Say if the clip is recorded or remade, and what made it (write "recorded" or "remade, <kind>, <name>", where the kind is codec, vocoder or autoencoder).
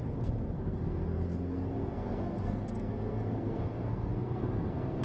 remade, codec, SNAC